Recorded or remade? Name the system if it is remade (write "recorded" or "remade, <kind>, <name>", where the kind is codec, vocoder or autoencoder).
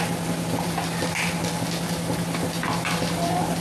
recorded